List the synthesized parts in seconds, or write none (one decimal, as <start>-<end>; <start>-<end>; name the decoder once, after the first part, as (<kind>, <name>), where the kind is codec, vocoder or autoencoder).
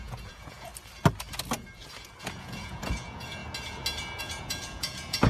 0.0-0.7 (vocoder, Vocos); 2.2-3.4; 4.2-5.3